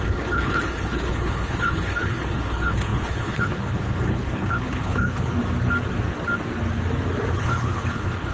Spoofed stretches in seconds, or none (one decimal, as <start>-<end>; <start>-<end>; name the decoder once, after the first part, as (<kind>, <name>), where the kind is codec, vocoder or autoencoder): 0.0-5.4 (codec, HILCodec); 7.4-8.3